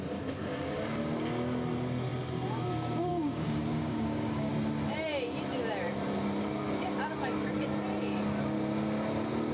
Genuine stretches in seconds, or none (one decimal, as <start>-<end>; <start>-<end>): 0.0-3.1; 4.5-9.5